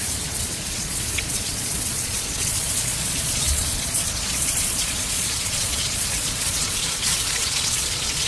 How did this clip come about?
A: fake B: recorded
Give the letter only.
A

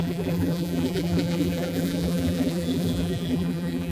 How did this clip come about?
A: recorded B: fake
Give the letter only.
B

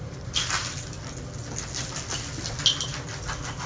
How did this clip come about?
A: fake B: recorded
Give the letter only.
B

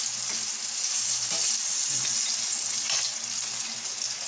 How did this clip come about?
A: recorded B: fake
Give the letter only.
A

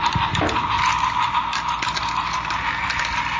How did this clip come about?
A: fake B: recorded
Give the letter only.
B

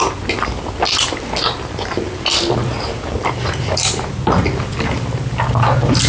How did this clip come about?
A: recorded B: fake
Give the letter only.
A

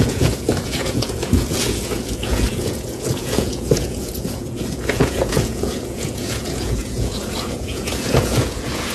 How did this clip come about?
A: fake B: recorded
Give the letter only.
A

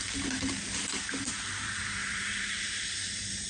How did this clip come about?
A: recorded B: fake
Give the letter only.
B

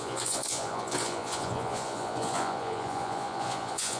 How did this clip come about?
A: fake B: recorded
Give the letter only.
A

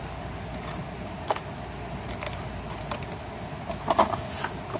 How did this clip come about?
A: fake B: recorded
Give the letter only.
B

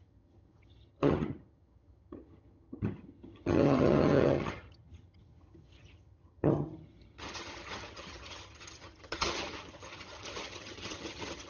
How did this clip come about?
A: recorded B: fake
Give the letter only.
B